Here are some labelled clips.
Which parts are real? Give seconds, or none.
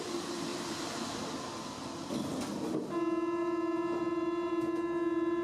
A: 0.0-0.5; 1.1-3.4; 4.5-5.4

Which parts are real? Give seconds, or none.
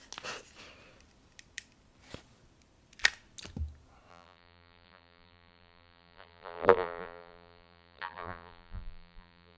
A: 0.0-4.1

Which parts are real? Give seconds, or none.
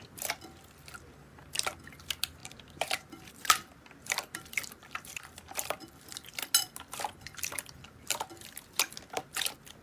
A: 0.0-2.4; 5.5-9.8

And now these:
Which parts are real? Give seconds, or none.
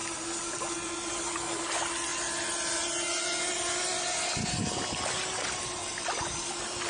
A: 1.6-2.1; 2.8-6.9